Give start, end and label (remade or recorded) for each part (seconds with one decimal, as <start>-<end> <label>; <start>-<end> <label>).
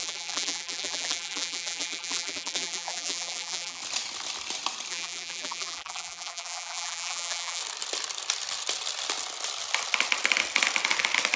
0.0-3.8 remade; 3.8-4.9 recorded; 4.9-7.6 remade; 7.6-11.4 recorded